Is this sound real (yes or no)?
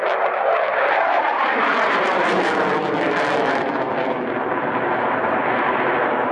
yes